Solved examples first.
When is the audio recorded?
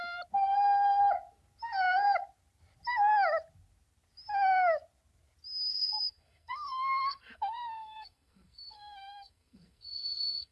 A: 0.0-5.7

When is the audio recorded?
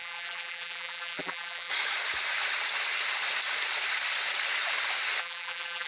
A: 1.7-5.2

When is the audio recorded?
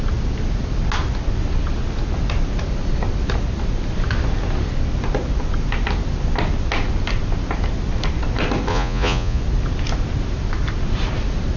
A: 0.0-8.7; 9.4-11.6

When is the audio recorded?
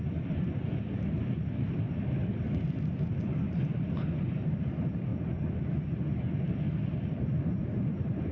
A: 0.0-8.3